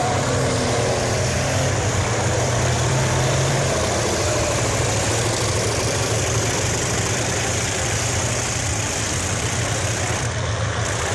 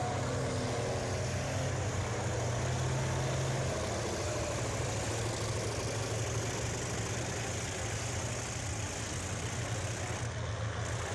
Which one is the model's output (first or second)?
first